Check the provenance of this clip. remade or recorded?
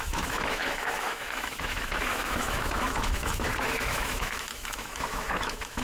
remade